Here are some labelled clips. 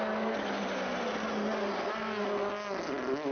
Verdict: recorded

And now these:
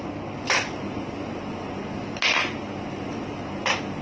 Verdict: recorded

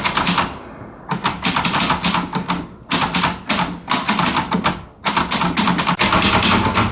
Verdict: recorded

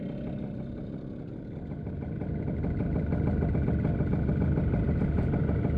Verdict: recorded